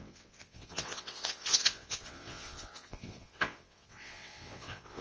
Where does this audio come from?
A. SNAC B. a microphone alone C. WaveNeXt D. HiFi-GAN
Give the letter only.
C